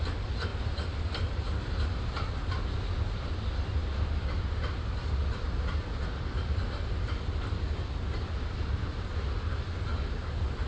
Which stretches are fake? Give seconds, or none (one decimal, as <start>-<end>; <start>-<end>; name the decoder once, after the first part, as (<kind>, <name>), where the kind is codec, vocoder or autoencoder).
none